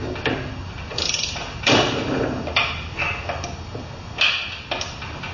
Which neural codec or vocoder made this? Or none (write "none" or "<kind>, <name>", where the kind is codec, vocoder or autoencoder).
none